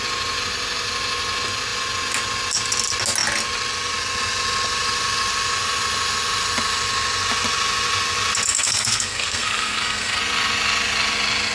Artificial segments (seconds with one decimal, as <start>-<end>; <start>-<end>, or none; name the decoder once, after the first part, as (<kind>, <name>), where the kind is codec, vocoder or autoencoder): 8.5-10.2 (codec, SNAC)